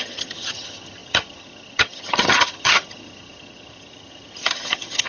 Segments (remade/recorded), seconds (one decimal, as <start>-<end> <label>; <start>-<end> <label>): 0.0-5.1 remade

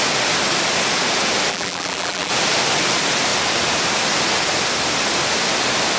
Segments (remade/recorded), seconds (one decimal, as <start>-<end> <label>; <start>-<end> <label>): 0.0-1.5 recorded; 1.5-2.3 remade; 2.3-6.0 recorded

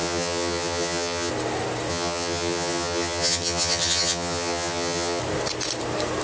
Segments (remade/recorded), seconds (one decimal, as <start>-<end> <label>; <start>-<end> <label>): 0.0-1.3 remade; 1.3-1.9 recorded; 1.9-5.2 remade; 5.2-6.2 recorded